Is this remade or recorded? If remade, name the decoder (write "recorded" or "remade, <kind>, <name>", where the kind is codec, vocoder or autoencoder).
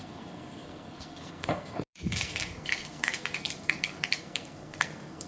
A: remade, codec, SNAC